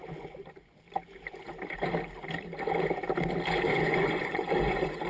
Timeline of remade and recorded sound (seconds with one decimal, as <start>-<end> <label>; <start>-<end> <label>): 0.0-3.7 recorded; 3.7-5.1 remade